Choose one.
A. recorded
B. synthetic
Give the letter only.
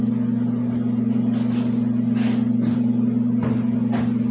A